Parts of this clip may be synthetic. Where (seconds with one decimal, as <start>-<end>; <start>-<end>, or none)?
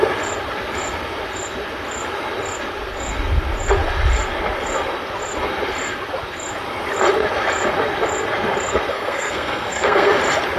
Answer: 8.9-10.2